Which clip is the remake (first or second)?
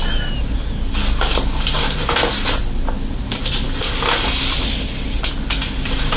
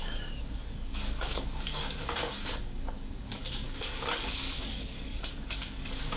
second